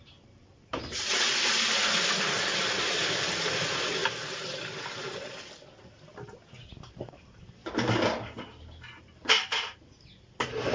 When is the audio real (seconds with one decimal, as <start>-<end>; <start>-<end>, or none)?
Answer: 0.0-0.7; 1.3-4.0; 5.0-10.7